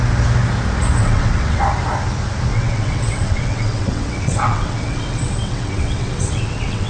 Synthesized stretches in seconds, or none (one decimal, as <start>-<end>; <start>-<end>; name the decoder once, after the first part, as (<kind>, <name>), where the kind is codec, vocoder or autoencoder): 1.0-1.6 (vocoder, WaveNeXt); 2.5-6.9